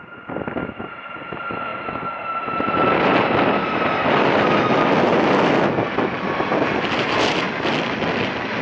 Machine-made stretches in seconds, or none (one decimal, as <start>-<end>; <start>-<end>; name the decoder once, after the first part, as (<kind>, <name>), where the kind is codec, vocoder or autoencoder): none